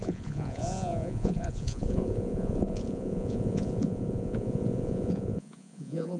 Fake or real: fake